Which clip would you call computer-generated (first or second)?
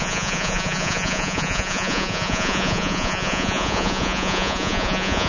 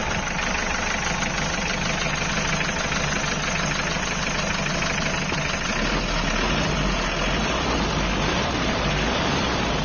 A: first